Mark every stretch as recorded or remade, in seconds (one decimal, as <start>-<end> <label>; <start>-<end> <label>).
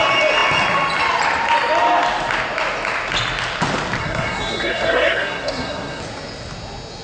0.0-4.0 recorded; 4.0-6.0 remade; 6.0-7.0 recorded